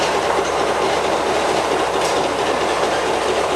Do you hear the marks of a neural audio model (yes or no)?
yes